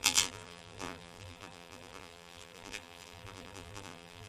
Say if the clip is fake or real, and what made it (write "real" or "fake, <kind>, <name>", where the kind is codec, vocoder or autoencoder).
fake, vocoder, BigVGAN v2